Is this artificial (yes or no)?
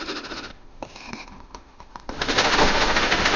yes